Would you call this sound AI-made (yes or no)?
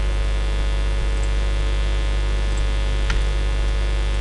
no